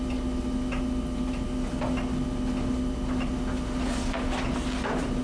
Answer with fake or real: real